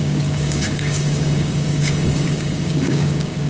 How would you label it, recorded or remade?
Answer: remade